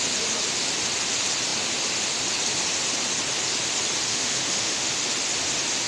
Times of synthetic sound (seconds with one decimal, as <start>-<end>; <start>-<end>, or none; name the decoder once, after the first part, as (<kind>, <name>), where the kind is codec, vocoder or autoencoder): 4.1-4.9 (autoencoder, DAC-VAE)